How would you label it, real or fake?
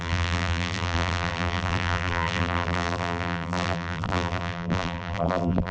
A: fake